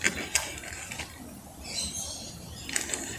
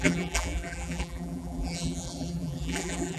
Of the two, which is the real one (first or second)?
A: first